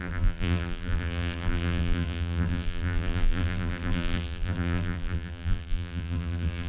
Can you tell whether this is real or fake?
fake